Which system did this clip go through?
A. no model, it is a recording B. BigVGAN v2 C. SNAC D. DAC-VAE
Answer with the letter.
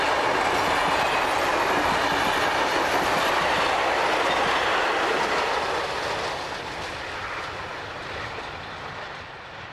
A